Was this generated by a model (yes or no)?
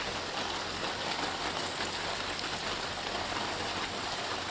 no